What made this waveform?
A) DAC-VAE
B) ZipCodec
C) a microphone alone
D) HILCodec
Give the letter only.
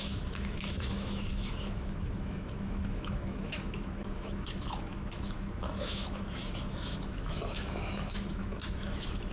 A